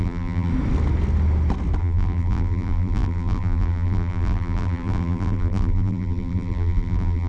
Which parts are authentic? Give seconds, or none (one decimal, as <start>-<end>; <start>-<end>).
0.5-1.8